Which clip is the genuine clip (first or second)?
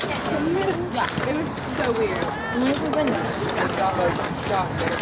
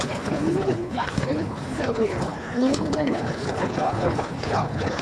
first